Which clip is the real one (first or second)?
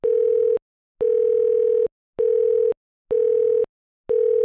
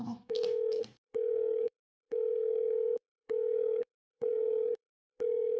first